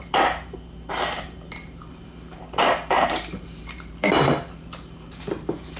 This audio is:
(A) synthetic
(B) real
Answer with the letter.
A